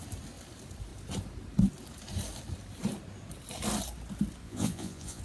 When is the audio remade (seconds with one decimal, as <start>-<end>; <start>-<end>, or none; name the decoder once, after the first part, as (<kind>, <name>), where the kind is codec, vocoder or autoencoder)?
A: 4.4-5.2 (vocoder, Vocos)